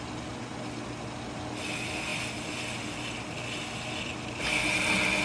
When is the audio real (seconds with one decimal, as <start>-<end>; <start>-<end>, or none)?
0.0-5.2